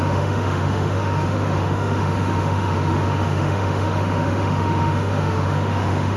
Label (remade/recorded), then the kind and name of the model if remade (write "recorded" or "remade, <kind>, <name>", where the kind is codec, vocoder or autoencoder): remade, autoencoder, DAC-VAE